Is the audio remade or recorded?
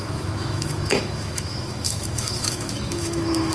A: remade